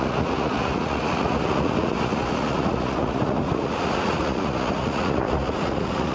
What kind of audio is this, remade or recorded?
remade